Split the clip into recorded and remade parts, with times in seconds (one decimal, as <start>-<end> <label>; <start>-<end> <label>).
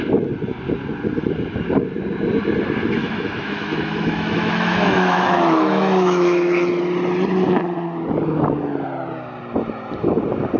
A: 0.0-3.0 recorded; 3.0-6.8 remade; 6.8-10.6 recorded